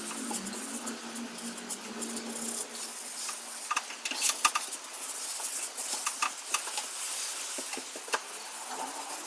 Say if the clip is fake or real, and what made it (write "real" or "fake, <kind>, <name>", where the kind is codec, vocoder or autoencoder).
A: real